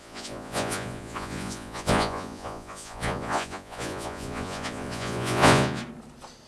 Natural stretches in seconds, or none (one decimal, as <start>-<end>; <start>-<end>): 5.8-6.5